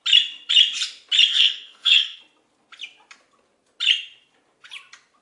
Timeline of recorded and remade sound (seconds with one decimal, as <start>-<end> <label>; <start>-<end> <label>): 0.0-1.3 recorded; 1.3-2.2 remade; 2.2-5.2 recorded

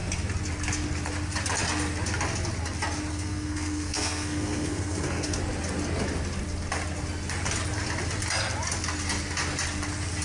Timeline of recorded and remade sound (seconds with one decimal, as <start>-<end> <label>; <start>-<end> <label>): 0.0-3.1 recorded; 3.1-5.4 remade; 5.4-10.2 recorded

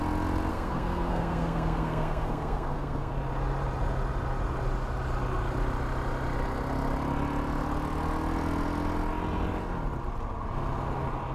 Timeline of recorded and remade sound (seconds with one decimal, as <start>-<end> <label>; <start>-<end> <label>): 0.0-0.5 recorded; 0.5-3.1 remade; 3.1-11.3 recorded